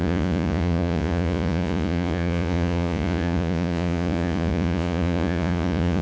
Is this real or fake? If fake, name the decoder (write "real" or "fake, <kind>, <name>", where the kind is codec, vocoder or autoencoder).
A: fake, vocoder, Vocos